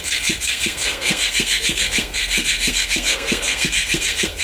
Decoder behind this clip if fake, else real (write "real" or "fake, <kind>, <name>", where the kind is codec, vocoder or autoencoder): fake, codec, SNAC